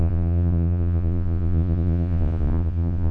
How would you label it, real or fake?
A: fake